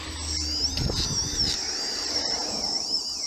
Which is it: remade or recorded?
recorded